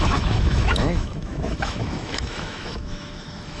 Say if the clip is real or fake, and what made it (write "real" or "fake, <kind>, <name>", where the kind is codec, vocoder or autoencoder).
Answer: fake, autoencoder, DAC-VAE